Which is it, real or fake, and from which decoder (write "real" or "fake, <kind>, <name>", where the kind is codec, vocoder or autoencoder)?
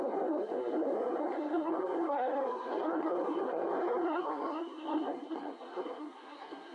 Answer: fake, codec, SNAC